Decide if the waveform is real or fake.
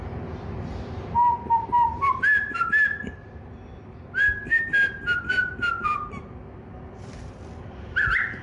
real